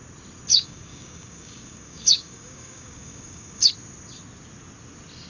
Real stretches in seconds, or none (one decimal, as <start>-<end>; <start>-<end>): 0.0-0.5; 3.7-5.3